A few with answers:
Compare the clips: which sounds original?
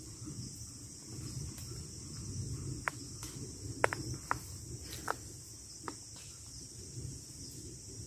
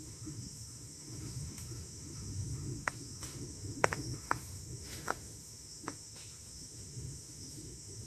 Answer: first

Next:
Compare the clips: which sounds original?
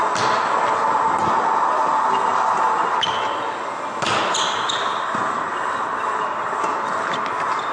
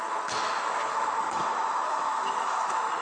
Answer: first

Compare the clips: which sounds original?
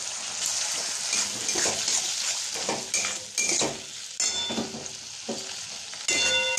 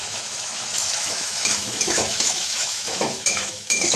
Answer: first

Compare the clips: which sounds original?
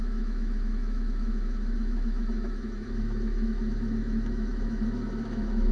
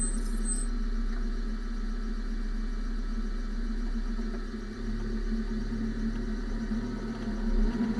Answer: second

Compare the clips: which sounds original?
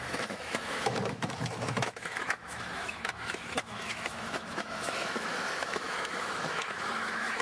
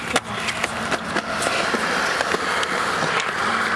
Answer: second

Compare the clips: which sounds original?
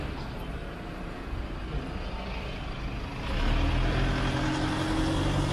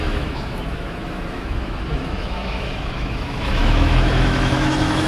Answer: first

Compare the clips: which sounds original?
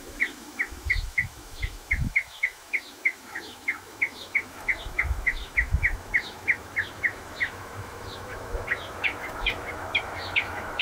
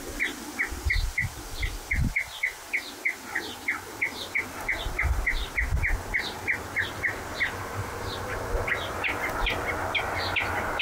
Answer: second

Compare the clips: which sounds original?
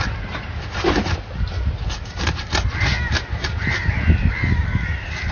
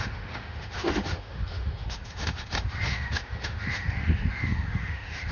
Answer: first